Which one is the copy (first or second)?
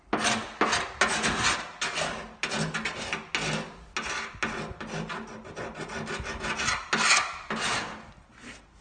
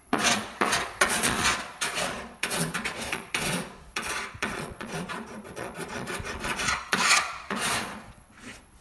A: second